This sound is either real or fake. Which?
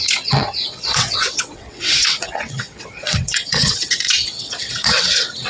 fake